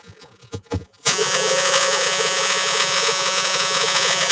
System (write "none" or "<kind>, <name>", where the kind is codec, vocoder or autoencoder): vocoder, Vocos